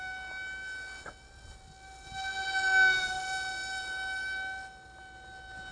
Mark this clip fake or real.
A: real